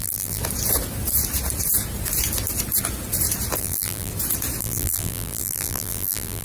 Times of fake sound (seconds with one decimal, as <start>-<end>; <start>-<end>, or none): 0.0-0.4; 3.6-4.1; 4.6-6.4